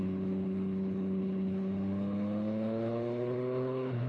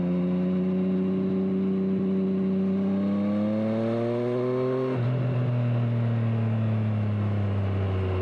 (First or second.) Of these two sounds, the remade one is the first